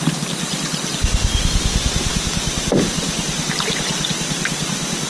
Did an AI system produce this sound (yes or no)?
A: no